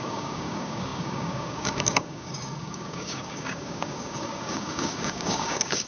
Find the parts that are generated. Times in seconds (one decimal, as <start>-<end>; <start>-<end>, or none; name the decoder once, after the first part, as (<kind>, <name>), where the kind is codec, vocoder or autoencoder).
0.0-5.9 (codec, DAC)